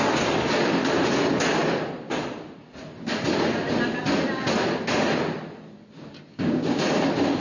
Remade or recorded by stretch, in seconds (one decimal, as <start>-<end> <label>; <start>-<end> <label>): 0.0-6.3 recorded; 6.3-6.8 remade; 6.8-7.4 recorded